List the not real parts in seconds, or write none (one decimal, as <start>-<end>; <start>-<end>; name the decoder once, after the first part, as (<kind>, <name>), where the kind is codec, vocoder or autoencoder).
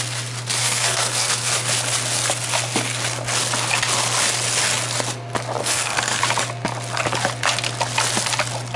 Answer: 0.6-1.5 (codec, SNAC); 5.6-6.2